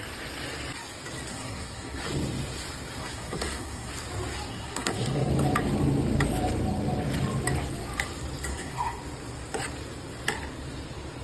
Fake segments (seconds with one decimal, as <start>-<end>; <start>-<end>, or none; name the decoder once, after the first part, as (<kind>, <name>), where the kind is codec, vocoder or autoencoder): 1.3-2.0 (codec, SNAC); 3.0-3.9; 4.5-5.3; 8.5-9.0